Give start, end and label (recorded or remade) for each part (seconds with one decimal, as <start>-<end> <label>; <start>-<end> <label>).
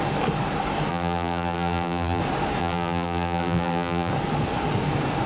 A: 0.0-0.9 recorded; 0.9-2.2 remade; 2.2-2.6 recorded; 2.6-4.1 remade; 4.1-5.3 recorded